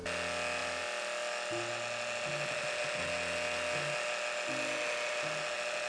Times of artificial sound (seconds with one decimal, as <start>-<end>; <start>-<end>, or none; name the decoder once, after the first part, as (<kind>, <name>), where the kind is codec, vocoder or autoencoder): none